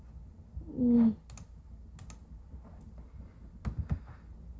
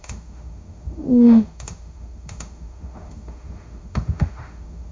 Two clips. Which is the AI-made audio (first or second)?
second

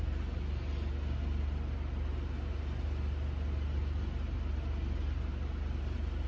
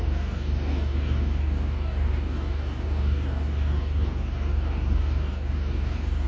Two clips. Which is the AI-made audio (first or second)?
second